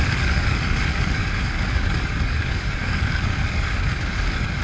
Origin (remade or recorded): remade